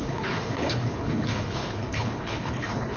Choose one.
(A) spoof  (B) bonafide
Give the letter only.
A